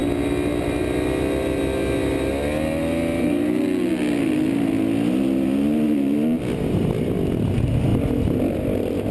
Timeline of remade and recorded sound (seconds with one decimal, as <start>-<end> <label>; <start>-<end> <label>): 0.0-9.1 recorded